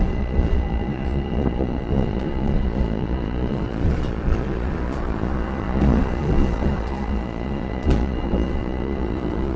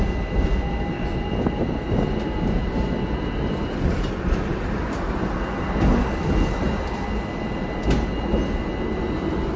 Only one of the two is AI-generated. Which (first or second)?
first